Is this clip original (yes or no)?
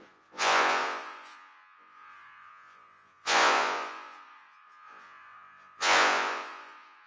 no